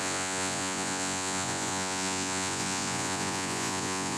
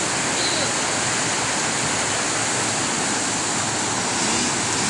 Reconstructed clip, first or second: first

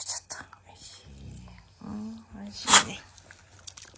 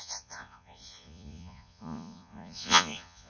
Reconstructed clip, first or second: second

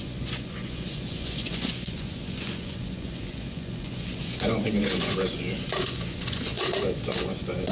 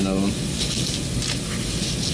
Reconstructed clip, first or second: first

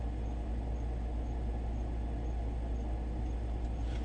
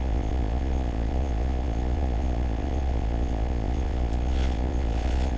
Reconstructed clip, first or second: second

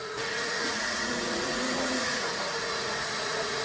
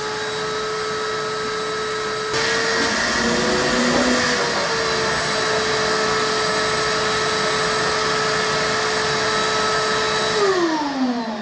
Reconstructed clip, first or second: first